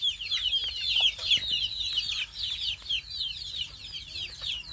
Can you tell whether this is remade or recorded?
remade